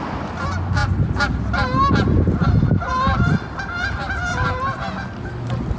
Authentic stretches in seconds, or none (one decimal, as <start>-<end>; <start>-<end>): 0.0-5.8